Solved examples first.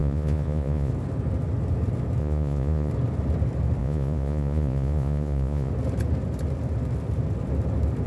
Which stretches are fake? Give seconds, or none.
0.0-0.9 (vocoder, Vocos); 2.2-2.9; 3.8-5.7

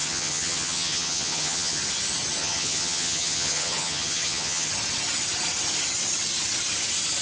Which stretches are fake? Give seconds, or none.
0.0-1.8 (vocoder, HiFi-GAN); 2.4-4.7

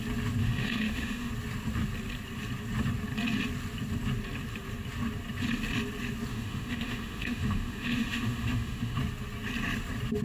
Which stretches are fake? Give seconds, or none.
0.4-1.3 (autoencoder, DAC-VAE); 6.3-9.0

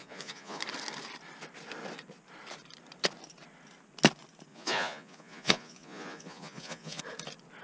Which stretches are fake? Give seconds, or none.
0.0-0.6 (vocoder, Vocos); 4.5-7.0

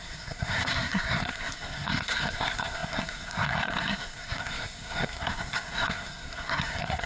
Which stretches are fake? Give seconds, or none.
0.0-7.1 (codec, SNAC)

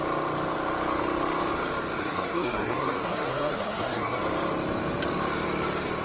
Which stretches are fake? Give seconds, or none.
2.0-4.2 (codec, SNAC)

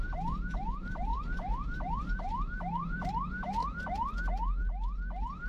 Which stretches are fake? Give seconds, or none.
0.0-1.1 (vocoder, BigVGAN v2); 1.9-3.6

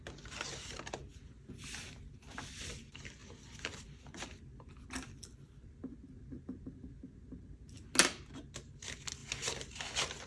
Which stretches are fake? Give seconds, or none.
none